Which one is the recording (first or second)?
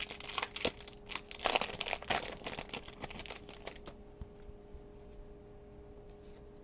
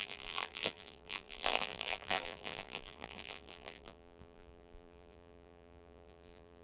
first